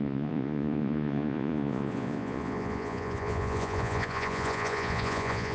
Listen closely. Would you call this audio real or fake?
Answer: fake